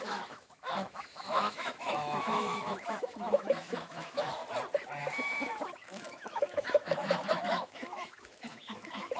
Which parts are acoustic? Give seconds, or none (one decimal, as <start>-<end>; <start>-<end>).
4.4-5.0